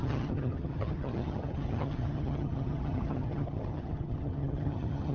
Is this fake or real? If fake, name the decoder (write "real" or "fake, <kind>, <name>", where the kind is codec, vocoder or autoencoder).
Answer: fake, vocoder, HiFi-GAN